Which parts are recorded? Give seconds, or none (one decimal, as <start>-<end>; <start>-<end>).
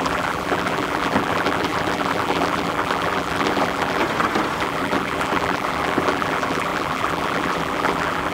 4.0-4.6